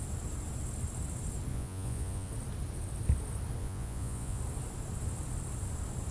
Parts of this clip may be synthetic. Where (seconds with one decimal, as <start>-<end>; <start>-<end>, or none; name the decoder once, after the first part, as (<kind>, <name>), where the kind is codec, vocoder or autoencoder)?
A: 1.5-2.3 (vocoder, Vocos); 3.6-4.4